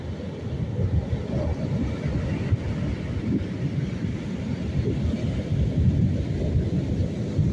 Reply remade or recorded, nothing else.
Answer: recorded